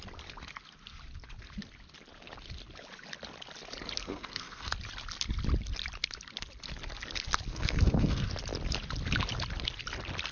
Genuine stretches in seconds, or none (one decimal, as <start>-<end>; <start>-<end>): 0.0-4.0; 4.7-7.5; 8.3-10.3